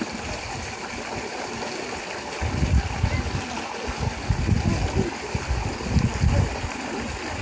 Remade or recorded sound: recorded